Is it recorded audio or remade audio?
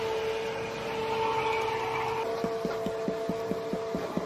recorded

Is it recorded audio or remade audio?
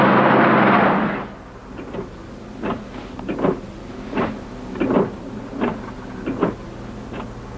recorded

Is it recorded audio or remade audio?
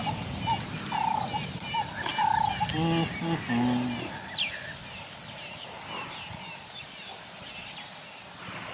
recorded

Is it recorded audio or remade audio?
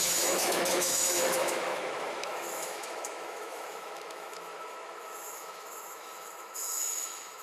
remade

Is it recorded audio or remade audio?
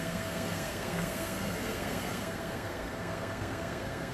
remade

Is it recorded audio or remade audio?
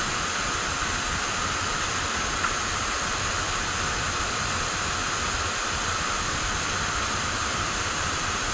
recorded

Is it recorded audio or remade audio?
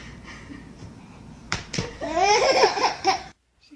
remade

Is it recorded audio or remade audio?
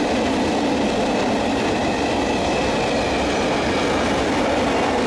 recorded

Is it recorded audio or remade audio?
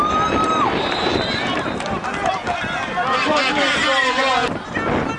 recorded